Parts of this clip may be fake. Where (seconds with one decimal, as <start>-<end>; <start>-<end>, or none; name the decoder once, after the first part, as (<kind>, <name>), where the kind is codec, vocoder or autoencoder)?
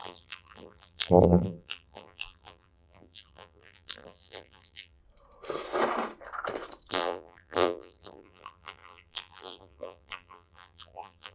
0.0-5.0 (vocoder, BigVGAN v2); 6.9-11.3